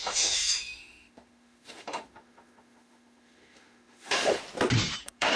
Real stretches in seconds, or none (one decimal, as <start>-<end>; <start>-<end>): 4.4-5.0